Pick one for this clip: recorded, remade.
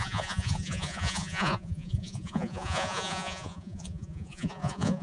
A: remade